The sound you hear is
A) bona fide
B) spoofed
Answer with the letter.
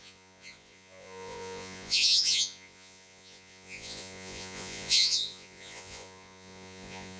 B